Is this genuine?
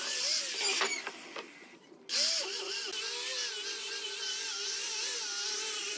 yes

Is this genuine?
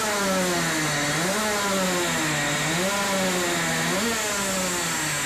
yes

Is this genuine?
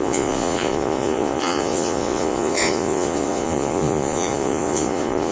no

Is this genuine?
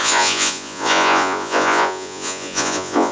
no